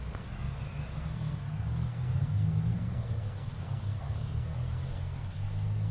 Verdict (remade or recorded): remade